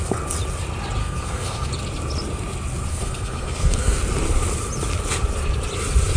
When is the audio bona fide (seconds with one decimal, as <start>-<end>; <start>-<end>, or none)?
0.0-1.0; 1.7-2.9; 4.0-6.2